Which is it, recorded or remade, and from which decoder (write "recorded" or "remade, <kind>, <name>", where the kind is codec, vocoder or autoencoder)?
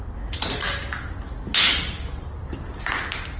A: recorded